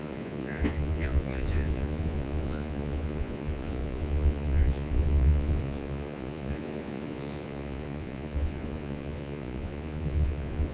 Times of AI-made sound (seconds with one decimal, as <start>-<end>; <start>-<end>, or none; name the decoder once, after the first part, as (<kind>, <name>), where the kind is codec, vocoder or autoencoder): 0.0-10.7 (vocoder, Vocos)